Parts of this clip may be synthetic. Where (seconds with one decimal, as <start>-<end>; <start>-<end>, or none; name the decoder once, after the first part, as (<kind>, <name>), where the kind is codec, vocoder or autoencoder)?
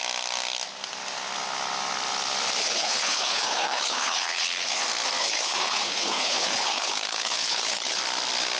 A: 2.6-4.8 (codec, HILCodec); 5.2-8.0